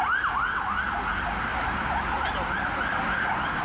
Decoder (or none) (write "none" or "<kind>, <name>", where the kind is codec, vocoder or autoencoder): none